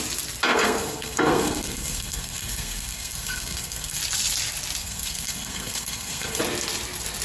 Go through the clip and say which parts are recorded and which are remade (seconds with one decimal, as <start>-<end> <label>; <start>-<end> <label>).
0.0-0.5 recorded; 0.5-4.0 remade; 4.0-4.8 recorded; 4.8-6.4 remade; 6.4-7.2 recorded